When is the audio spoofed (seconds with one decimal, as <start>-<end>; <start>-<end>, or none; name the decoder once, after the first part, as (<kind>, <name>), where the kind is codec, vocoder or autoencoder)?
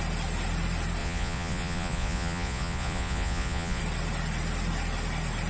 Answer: 1.0-3.8 (vocoder, Vocos)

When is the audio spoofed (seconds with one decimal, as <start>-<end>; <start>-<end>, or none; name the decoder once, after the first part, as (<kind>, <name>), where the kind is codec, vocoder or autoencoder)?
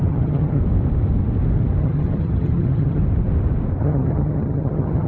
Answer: 0.0-0.6 (vocoder, HiFi-GAN); 1.8-3.0; 3.8-5.1